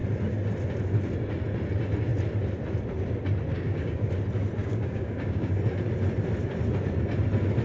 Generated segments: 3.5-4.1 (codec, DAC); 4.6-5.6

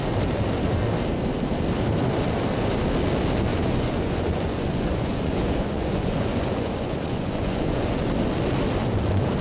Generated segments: 3.5-8.1 (vocoder, Vocos)

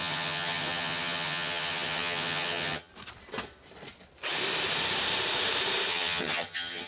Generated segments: 0.0-2.9 (vocoder, HiFi-GAN); 5.9-6.9

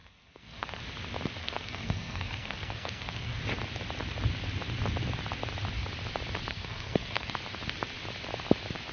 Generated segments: 0.0-0.8 (codec, SNAC); 1.4-3.4; 6.5-7.3

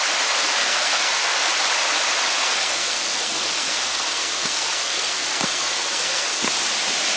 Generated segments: 0.6-1.4 (codec, SNAC); 2.4-6.5

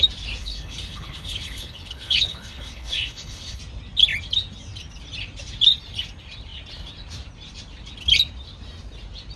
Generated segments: 0.4-3.6 (codec, HILCodec)